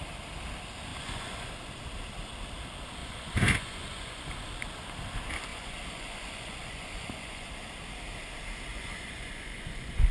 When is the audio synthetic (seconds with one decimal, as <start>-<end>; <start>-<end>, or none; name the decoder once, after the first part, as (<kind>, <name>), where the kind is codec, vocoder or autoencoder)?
0.9-1.5 (vocoder, Vocos); 3.0-4.3; 5.5-7.5; 8.7-10.1